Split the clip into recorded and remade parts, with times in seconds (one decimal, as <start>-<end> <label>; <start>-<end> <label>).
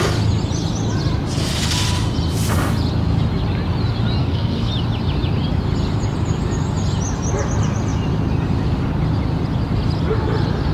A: 0.0-4.2 recorded; 4.2-4.7 remade; 4.7-10.7 recorded